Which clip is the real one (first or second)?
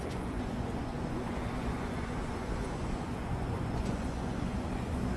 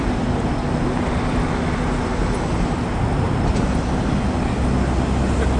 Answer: second